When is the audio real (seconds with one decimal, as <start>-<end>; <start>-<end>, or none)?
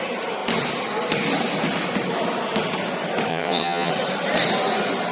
0.0-3.3; 3.9-5.1